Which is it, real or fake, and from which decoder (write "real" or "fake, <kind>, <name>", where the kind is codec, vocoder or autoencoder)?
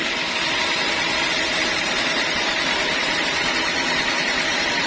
fake, vocoder, BigVGAN v2